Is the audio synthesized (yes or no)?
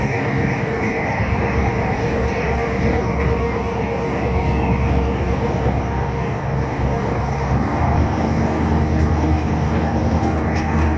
yes